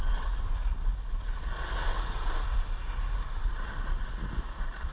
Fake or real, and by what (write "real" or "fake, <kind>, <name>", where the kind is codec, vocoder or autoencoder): real